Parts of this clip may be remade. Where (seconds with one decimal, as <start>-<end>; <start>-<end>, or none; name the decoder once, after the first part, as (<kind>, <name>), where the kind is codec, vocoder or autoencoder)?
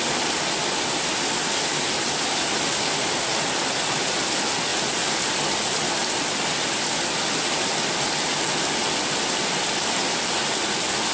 none